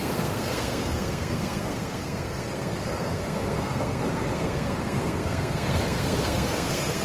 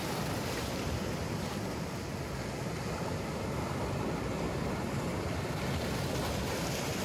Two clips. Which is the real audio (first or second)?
second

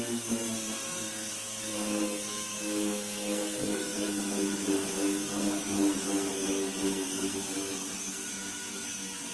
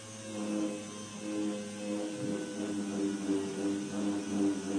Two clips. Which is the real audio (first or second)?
second